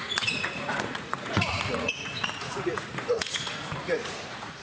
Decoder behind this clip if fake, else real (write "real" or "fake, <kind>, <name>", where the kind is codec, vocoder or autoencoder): fake, vocoder, Vocos